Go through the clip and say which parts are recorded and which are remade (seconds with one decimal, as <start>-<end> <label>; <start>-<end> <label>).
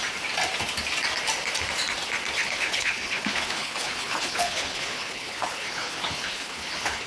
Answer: 0.0-2.4 recorded; 2.4-7.1 remade